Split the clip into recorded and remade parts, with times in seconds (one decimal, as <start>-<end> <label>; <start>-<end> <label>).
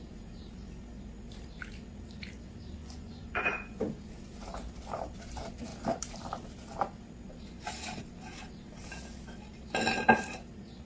0.0-2.8 recorded; 2.8-3.8 remade; 3.8-10.9 recorded